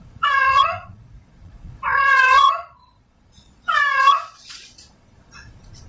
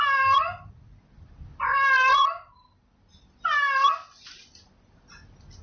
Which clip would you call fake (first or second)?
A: first